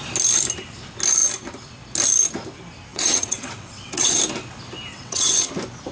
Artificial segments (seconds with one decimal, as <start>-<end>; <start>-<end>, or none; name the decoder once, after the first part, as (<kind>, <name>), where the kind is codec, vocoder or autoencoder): 2.9-4.2 (vocoder, WaveNeXt); 4.9-5.5